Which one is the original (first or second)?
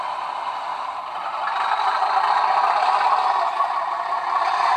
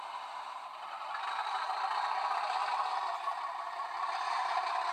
second